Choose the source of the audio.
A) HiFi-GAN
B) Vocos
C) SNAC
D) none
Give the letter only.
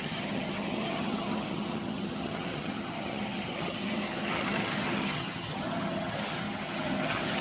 A